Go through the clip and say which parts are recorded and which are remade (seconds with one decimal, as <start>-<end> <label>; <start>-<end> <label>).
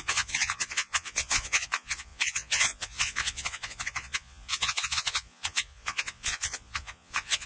0.0-7.5 remade